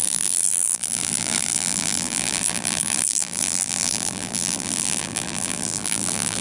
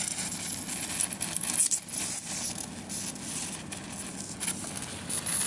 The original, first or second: second